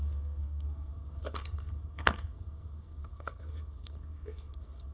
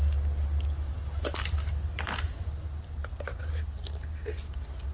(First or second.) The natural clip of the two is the second